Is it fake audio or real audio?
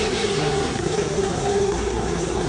fake